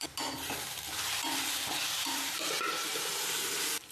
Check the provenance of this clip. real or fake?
fake